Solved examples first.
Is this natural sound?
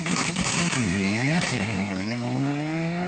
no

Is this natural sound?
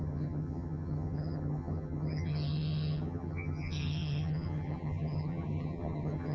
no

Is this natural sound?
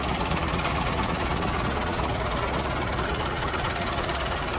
no